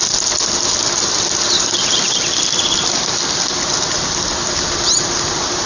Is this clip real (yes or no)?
yes